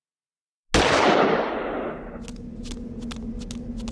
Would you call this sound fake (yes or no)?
no